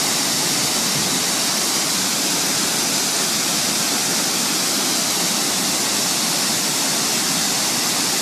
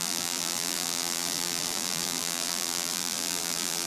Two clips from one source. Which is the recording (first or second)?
first